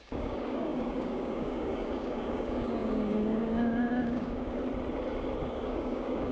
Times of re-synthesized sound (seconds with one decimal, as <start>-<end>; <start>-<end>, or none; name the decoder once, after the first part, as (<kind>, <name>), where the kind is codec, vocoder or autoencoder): 0.0-4.6 (codec, DAC); 5.5-6.3